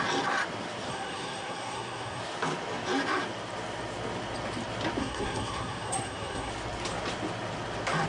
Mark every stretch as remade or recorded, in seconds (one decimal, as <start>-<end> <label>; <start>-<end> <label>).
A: 0.0-0.9 recorded; 0.9-2.2 remade; 2.2-5.0 recorded; 5.0-6.5 remade; 6.5-8.1 recorded